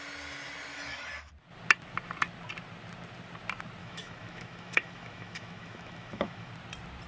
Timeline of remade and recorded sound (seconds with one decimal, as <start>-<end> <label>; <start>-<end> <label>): 0.0-0.7 recorded; 0.7-1.3 remade; 1.3-3.8 recorded; 3.8-6.5 remade; 6.5-7.1 recorded